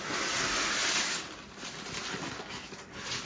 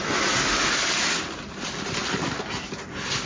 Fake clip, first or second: second